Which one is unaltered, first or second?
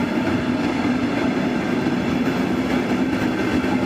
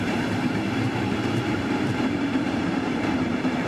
first